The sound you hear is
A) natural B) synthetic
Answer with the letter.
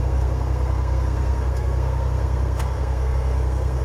B